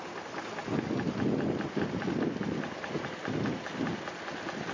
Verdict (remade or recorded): recorded